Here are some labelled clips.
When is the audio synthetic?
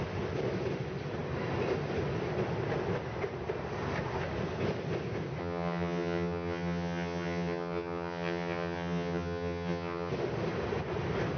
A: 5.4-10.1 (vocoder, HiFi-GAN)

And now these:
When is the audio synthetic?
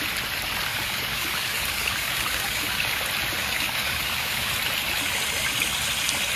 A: 0.7-3.0 (codec, DAC); 3.4-4.5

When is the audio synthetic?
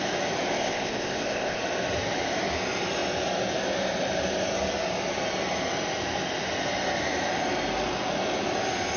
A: 0.5-1.6 (codec, ZipCodec)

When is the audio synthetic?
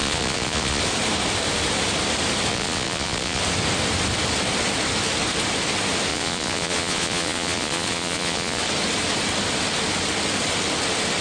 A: 0.0-0.8 (vocoder, Vocos); 2.5-3.4; 6.1-8.6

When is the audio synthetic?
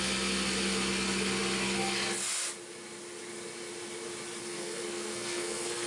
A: 4.4-5.9 (codec, SNAC)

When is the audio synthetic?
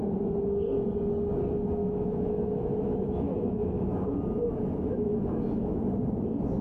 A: 1.8-5.8 (autoencoder, DAC-VAE)